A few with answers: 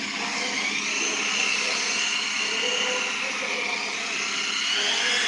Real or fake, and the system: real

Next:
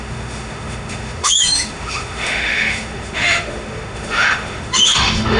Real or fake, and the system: fake, autoencoder, DAC-VAE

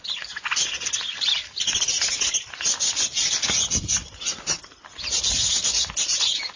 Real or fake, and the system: real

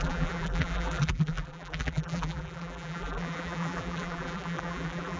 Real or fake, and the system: fake, vocoder, BigVGAN v2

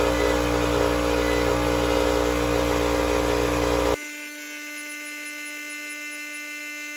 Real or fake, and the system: real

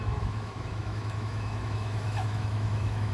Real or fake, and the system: fake, autoencoder, DAC-VAE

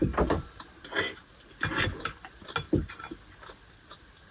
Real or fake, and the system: real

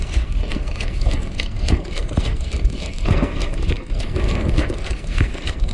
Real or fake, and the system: fake, codec, SNAC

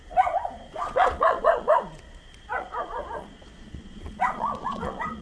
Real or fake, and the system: fake, vocoder, Vocos